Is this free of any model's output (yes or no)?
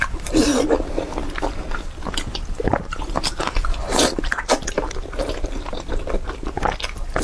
yes